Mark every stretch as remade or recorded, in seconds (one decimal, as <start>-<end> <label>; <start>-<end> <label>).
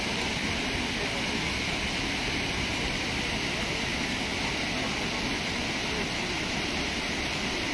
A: 0.0-7.7 recorded